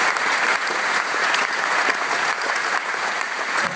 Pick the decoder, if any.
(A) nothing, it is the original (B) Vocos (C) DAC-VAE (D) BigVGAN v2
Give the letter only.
B